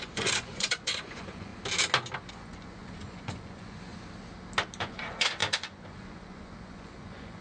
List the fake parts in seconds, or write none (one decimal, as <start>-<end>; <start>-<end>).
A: 0.0-1.5; 2.3-3.9; 4.8-7.4